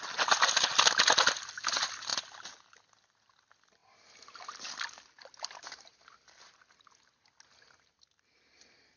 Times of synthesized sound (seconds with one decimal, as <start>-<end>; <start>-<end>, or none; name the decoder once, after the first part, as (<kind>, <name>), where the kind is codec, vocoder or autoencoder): none